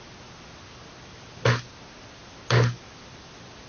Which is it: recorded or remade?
recorded